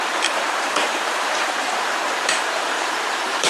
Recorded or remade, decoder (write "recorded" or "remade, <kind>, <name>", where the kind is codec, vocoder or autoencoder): remade, vocoder, BigVGAN v2